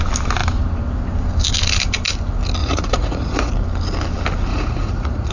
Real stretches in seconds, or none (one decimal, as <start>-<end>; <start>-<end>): 0.0-2.6; 3.5-4.5